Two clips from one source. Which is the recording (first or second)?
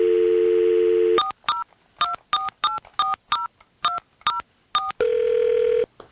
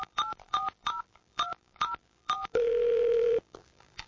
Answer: first